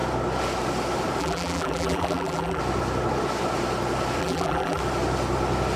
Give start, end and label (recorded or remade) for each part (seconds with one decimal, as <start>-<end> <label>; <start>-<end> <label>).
0.0-1.2 recorded; 1.2-2.6 remade; 2.6-4.2 recorded; 4.2-4.8 remade; 4.8-5.8 recorded